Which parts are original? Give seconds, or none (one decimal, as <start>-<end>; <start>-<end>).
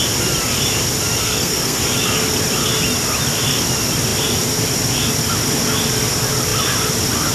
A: 0.0-1.2; 1.8-7.3